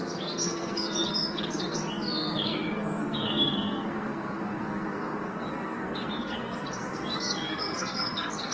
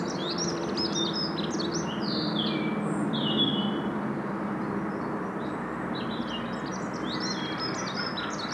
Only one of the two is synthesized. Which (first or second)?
first